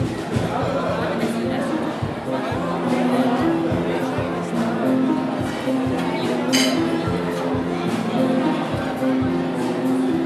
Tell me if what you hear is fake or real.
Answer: real